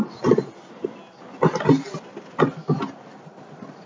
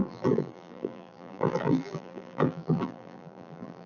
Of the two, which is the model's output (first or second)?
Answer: second